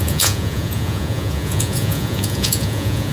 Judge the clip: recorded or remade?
remade